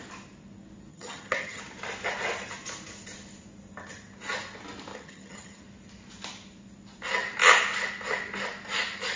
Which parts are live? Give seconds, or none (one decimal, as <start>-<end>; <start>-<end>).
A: 0.0-0.9; 1.6-4.9; 5.6-9.2